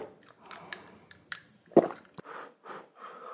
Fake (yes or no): no